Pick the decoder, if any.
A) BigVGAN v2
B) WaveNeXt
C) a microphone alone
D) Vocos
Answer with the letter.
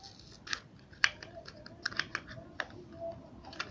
C